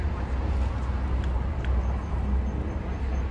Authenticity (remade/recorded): recorded